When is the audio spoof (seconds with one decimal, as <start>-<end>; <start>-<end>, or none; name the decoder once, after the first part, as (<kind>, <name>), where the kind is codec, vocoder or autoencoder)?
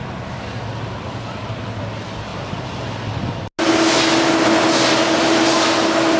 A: none